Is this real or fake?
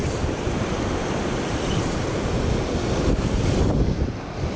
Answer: real